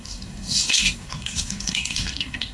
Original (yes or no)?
no